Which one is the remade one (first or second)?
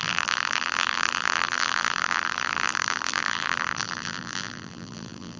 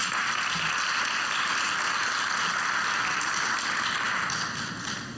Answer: first